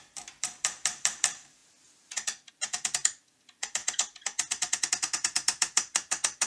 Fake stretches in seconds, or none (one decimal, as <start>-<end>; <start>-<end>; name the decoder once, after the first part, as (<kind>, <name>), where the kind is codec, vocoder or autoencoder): 0.0-1.6 (vocoder, BigVGAN v2); 2.5-3.8; 4.9-6.5